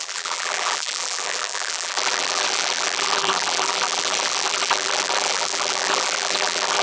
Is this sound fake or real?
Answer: fake